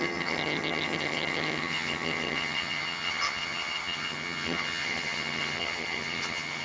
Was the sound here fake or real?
fake